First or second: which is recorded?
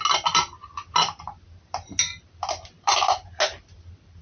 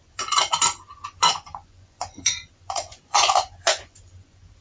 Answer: first